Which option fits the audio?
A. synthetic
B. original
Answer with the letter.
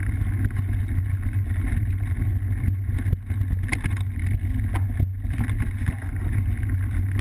B